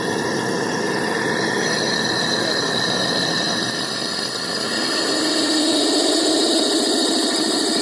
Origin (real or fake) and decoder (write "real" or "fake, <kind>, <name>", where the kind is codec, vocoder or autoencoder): real